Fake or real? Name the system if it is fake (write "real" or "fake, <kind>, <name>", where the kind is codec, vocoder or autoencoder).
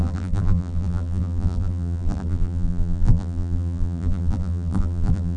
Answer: fake, vocoder, BigVGAN v2